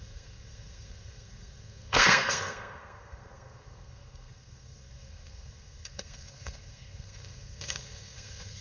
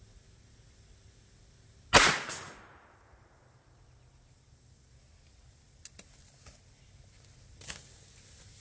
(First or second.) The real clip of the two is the second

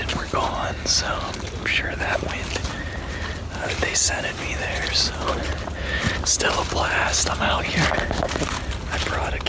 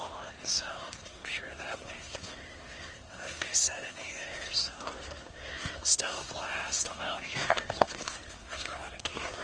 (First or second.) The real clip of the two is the first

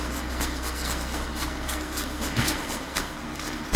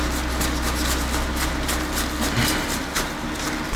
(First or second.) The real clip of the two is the second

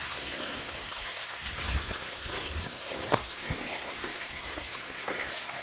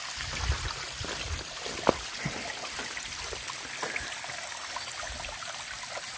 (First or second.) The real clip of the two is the second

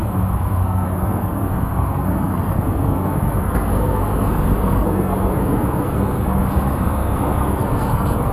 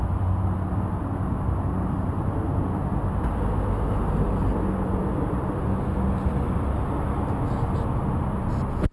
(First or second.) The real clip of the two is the second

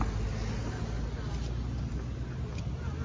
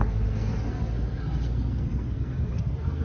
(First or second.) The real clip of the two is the first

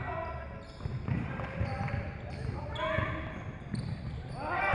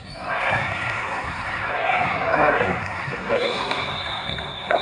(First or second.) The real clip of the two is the first